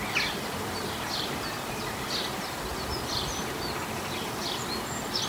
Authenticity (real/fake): real